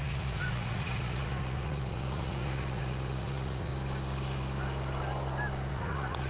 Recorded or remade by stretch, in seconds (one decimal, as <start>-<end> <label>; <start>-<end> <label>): 0.0-3.7 remade; 3.7-5.7 recorded; 5.7-6.3 remade